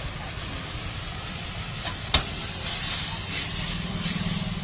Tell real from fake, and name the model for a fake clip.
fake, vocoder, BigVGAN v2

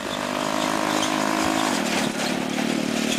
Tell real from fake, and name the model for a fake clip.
real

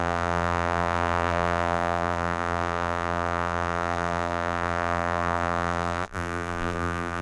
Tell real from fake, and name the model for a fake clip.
fake, vocoder, BigVGAN v2